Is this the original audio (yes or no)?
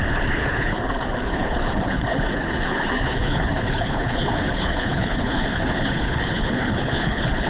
no